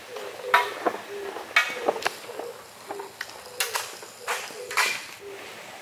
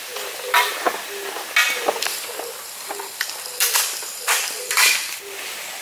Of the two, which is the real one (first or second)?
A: first